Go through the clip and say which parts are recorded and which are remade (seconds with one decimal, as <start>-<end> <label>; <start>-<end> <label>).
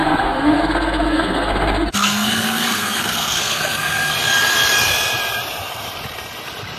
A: 0.0-4.1 remade; 4.1-6.8 recorded